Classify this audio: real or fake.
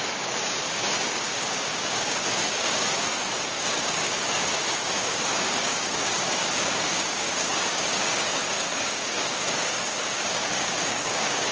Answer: fake